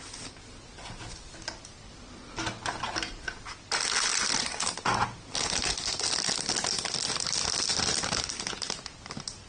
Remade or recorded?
recorded